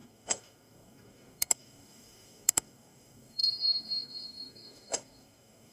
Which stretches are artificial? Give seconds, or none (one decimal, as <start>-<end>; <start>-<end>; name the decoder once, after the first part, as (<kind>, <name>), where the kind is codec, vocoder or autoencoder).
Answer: 0.0-5.7 (codec, DAC)